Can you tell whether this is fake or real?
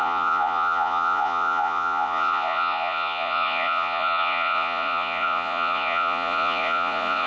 fake